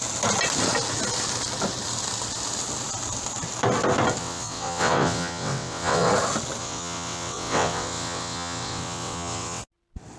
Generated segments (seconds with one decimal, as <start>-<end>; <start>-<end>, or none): 4.2-6.1; 6.6-9.6